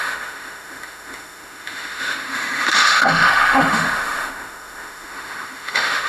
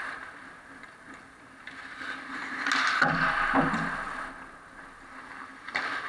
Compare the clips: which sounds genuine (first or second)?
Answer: second